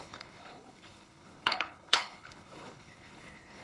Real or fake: fake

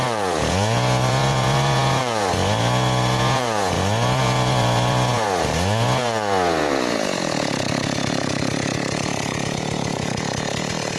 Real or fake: fake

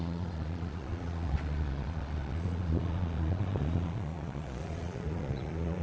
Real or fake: fake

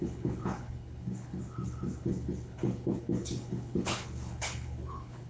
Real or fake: fake